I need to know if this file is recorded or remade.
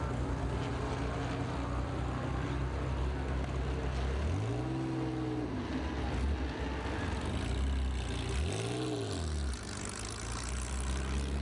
recorded